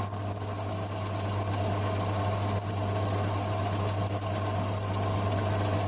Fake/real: real